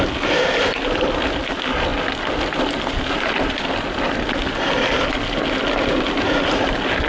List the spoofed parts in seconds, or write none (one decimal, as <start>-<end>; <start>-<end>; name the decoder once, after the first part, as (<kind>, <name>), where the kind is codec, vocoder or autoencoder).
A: none